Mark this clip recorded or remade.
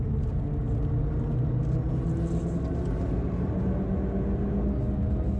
recorded